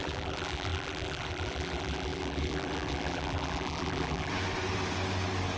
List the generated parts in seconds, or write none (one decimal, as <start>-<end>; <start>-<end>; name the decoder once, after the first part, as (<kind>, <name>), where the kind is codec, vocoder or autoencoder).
0.0-4.3 (vocoder, BigVGAN v2)